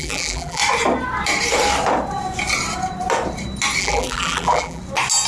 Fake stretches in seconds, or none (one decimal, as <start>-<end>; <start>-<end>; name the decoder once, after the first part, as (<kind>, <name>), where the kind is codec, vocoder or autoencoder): 0.0-0.6 (vocoder, BigVGAN v2); 3.8-4.8